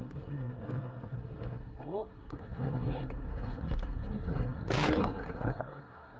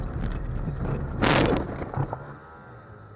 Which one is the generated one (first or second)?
first